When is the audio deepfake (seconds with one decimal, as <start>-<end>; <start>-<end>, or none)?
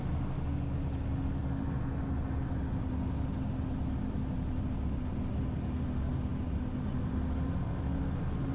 none